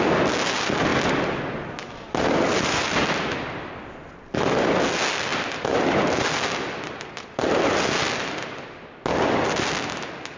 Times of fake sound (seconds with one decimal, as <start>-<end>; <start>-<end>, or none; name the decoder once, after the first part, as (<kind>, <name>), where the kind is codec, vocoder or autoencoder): none